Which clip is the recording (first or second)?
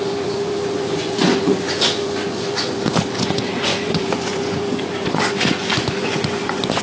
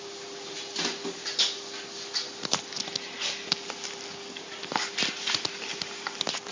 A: second